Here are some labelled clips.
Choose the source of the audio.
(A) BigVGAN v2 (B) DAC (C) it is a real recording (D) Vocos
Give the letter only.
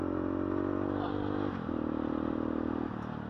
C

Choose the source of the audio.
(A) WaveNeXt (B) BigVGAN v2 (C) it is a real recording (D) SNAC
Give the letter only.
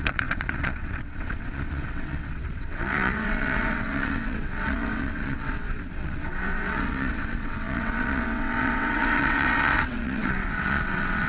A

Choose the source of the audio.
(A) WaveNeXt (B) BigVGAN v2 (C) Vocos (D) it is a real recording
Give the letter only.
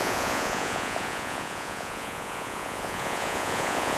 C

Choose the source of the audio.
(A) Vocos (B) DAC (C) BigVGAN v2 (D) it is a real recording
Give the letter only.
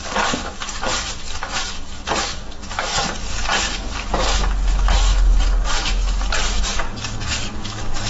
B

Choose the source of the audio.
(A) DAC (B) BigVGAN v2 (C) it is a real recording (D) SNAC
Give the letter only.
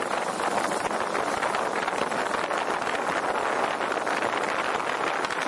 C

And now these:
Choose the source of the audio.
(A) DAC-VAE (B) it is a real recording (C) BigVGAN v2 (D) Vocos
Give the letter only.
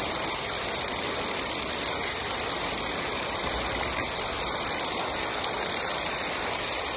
C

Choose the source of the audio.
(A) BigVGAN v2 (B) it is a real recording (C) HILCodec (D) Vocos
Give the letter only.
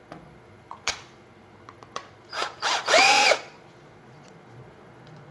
D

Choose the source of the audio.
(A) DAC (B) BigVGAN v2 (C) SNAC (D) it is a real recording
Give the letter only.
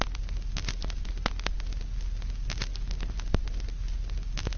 D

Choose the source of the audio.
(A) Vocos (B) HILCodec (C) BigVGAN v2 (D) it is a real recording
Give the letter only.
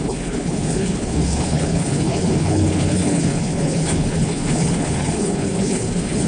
B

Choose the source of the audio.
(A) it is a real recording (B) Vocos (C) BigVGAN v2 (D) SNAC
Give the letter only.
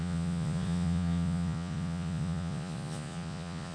B